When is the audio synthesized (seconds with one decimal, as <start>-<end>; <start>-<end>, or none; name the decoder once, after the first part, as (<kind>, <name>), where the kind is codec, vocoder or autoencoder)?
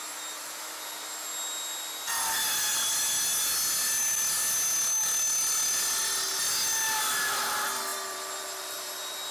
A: 7.9-8.9 (vocoder, BigVGAN v2)